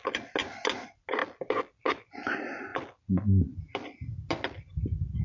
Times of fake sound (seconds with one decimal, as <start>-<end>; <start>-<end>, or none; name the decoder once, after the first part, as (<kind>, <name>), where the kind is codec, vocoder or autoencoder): none